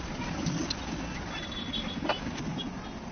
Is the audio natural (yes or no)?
yes